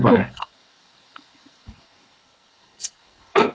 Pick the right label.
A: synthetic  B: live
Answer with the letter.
A